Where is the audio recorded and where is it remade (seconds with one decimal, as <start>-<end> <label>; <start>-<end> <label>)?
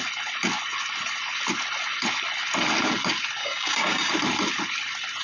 0.0-3.4 recorded; 3.4-4.1 remade; 4.1-5.2 recorded